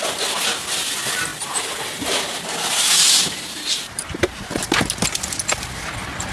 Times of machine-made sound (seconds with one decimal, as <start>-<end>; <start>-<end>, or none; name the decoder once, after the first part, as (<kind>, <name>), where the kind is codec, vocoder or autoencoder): 1.3-4.5 (vocoder, BigVGAN v2)